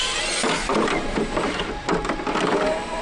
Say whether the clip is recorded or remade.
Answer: recorded